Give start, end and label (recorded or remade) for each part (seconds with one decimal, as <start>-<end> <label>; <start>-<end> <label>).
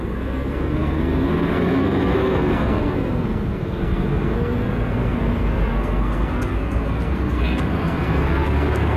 0.0-9.0 remade